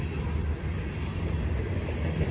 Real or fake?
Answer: fake